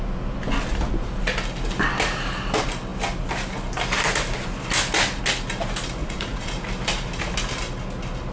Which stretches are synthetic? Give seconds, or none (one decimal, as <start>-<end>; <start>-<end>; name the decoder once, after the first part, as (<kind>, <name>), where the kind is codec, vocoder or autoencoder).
6.0-6.5 (vocoder, Vocos)